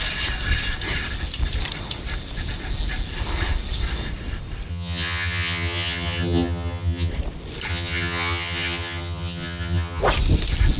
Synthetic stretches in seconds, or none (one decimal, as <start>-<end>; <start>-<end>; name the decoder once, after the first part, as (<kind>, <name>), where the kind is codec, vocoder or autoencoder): 4.7-7.1 (vocoder, HiFi-GAN); 7.7-10.0